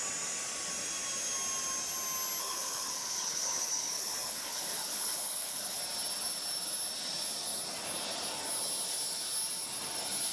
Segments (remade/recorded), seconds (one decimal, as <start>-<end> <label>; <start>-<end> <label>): 0.0-2.4 recorded; 2.4-5.8 remade; 5.8-10.3 recorded